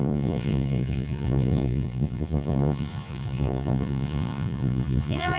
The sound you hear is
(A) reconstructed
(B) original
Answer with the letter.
A